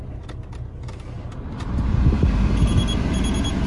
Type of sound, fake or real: real